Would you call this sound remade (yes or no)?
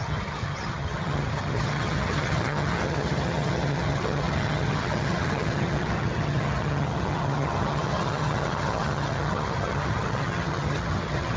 yes